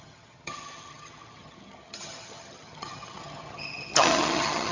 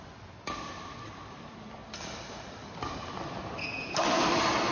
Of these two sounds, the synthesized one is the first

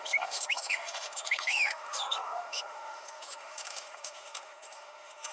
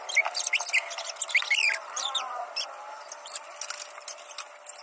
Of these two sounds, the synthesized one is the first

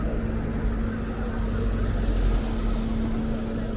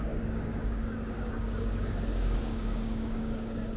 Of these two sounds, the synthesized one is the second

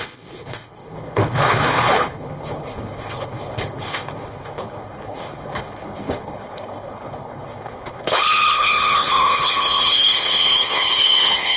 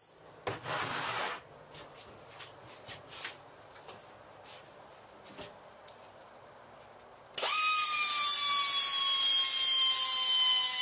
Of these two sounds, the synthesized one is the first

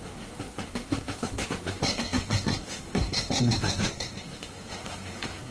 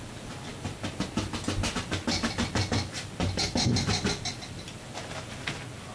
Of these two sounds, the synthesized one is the first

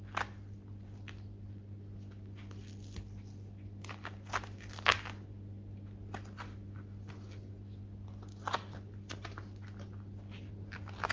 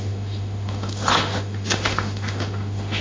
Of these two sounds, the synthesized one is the second